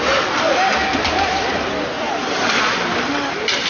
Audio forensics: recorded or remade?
recorded